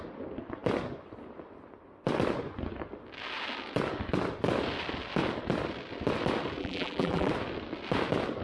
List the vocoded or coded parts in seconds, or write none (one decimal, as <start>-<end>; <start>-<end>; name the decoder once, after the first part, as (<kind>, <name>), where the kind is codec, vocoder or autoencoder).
6.6-7.3 (vocoder, BigVGAN v2)